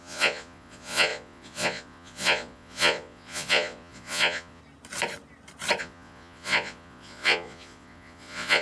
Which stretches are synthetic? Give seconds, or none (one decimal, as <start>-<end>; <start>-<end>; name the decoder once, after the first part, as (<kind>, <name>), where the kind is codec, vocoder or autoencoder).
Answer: 0.0-4.6 (vocoder, Vocos); 5.8-8.6